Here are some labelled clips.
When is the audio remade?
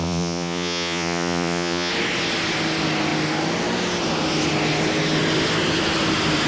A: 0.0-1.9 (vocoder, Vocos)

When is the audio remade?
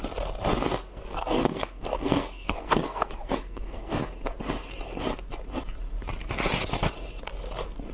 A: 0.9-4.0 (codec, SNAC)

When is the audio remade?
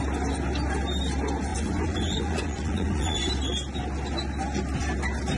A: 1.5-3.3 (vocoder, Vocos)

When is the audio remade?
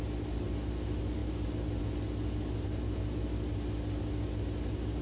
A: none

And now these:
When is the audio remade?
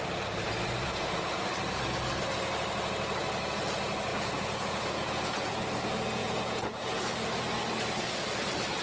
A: 0.8-1.4 (vocoder, Vocos); 4.1-5.5; 6.2-7.0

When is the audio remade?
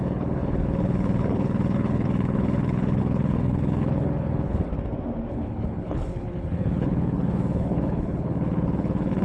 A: 0.0-4.7 (codec, HILCodec); 5.3-9.2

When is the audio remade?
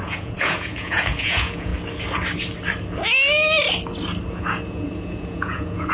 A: 0.0-1.7 (vocoder, Vocos); 4.3-5.9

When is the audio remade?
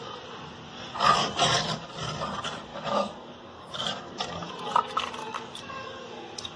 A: 1.2-1.9 (codec, DAC); 2.7-4.5; 5.2-6.6